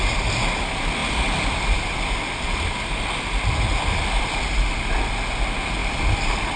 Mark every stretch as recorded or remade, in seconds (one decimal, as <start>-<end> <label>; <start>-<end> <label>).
0.0-6.6 recorded

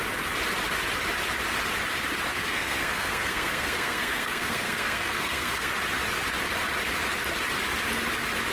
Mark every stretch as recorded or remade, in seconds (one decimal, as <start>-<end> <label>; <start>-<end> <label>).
0.0-2.3 recorded; 2.3-5.7 remade; 5.7-8.5 recorded

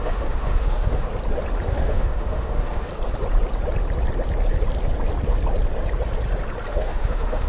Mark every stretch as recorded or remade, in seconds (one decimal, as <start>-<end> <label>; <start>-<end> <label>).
0.0-1.1 remade; 1.1-1.7 recorded; 1.7-2.9 remade; 2.9-6.7 recorded; 6.7-7.5 remade

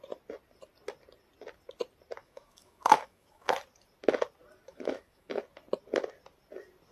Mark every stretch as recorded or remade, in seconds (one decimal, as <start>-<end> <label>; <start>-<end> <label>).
0.0-2.2 recorded; 2.2-3.5 remade; 3.5-4.7 recorded; 4.7-5.4 remade; 5.4-6.9 recorded

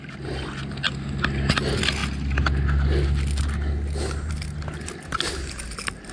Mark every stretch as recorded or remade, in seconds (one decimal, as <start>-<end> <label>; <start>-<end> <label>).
0.0-6.1 recorded

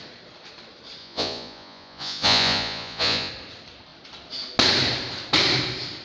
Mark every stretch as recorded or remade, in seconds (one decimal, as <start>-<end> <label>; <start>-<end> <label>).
0.0-1.0 recorded; 1.0-3.3 remade; 3.3-6.0 recorded

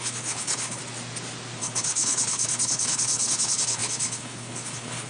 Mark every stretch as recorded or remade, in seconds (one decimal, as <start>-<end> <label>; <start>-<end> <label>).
0.0-0.8 remade; 0.8-1.6 recorded; 1.6-5.1 remade

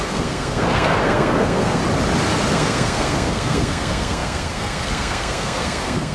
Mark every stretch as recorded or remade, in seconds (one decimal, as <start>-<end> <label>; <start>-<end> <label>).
0.0-1.8 remade; 1.8-2.5 recorded; 2.5-6.1 remade